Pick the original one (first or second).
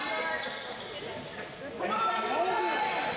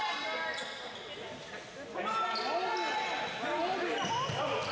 second